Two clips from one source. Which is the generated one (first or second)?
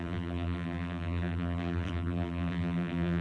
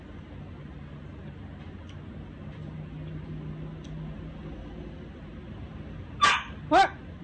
first